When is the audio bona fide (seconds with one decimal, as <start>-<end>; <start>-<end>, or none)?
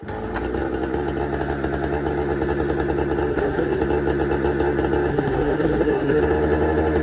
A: 0.0-3.3; 3.8-5.1; 6.2-7.0